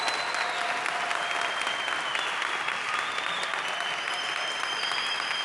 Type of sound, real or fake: real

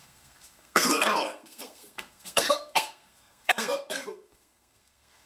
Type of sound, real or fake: fake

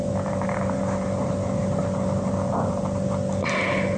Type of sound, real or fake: real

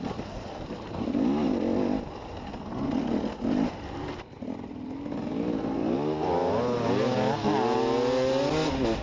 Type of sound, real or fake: real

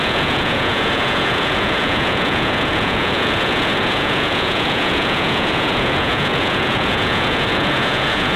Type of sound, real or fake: fake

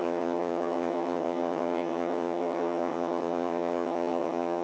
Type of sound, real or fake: fake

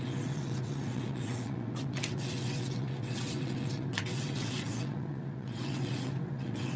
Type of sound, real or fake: fake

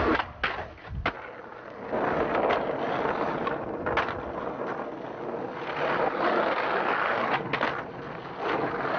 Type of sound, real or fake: real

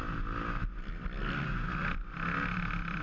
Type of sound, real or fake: real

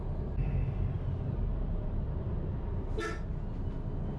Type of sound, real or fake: real